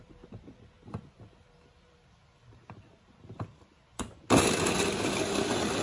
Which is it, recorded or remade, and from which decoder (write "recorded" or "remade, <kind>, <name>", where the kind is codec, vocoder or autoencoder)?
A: remade, vocoder, BigVGAN v2